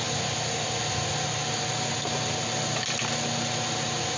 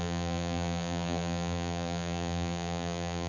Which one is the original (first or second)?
first